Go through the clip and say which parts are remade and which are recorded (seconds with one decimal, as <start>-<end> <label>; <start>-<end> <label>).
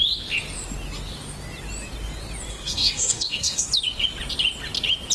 0.0-2.5 recorded; 2.5-3.7 remade; 3.7-5.1 recorded